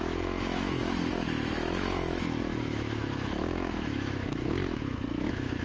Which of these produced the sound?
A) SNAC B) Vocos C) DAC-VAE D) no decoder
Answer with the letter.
C